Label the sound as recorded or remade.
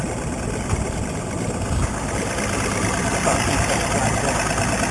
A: recorded